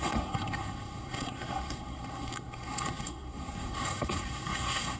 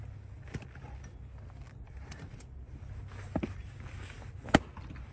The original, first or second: second